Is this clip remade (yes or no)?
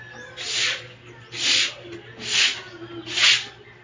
no